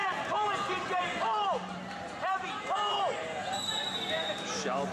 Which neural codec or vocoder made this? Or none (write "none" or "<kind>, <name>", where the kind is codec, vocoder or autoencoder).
vocoder, BigVGAN v2